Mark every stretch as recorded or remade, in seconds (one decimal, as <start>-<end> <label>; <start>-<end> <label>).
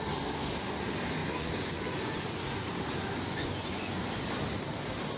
0.0-1.2 recorded; 1.2-4.3 remade; 4.3-5.2 recorded